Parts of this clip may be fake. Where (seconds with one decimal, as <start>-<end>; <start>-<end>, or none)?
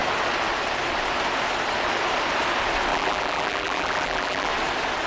2.9-4.5